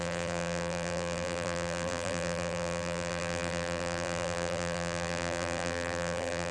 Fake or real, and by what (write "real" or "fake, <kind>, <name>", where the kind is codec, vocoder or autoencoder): fake, vocoder, BigVGAN v2